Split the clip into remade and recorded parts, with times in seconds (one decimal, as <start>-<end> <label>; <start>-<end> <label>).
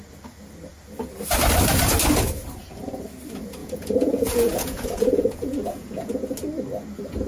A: 0.0-3.6 recorded; 3.6-6.2 remade; 6.2-7.3 recorded